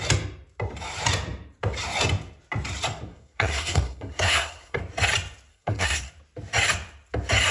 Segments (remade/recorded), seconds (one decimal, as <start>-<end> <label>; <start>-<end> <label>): 0.0-3.1 recorded; 3.1-4.8 remade; 4.8-5.5 recorded; 5.5-6.1 remade; 6.1-7.5 recorded